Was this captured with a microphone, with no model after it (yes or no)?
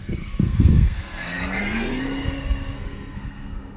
no